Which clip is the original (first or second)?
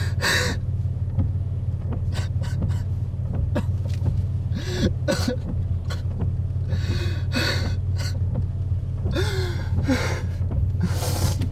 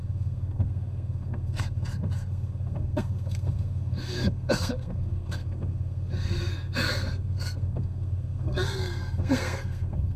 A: first